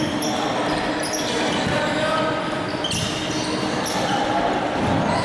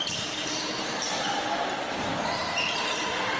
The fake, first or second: second